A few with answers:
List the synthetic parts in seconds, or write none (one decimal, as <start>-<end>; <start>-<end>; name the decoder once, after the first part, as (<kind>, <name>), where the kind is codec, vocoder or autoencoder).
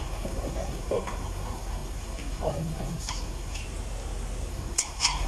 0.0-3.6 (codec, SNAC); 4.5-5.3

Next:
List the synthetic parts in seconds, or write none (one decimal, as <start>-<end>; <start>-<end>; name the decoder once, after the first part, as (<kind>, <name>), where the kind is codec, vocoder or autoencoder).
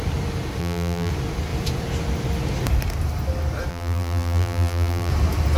0.6-1.1 (vocoder, BigVGAN v2); 3.7-5.1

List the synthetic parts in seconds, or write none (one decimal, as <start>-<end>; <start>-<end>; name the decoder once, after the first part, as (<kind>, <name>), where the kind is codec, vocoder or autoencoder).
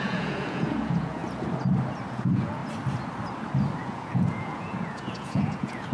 0.0-1.2 (vocoder, Vocos); 2.1-2.6; 3.8-5.9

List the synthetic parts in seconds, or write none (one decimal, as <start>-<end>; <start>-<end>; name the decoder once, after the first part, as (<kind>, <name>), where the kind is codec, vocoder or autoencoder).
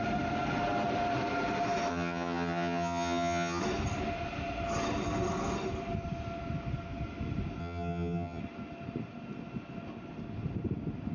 1.9-3.6 (vocoder, HiFi-GAN); 7.6-8.4